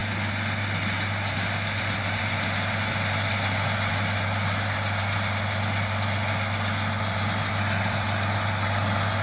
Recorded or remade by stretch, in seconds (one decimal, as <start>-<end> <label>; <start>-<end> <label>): 0.0-9.2 recorded